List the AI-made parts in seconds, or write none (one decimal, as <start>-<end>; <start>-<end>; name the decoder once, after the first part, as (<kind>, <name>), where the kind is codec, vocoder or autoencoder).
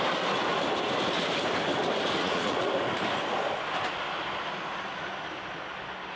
2.2-2.7 (vocoder, Vocos)